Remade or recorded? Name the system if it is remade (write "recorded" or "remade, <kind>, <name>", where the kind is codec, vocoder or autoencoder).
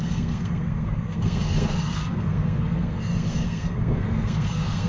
remade, codec, SNAC